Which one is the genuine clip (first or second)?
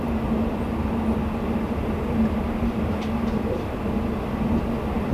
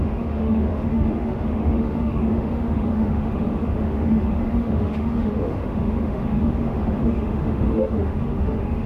first